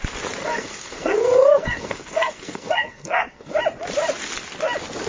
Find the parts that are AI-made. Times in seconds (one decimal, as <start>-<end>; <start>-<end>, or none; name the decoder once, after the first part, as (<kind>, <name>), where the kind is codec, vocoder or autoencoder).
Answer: 0.4-3.5 (codec, SNAC)